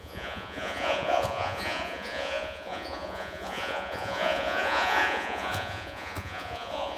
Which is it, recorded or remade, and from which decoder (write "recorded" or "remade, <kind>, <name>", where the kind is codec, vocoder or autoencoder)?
remade, vocoder, Vocos